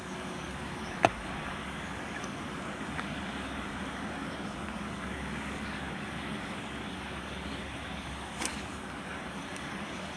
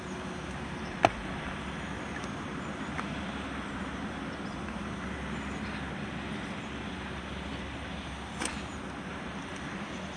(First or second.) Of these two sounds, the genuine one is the second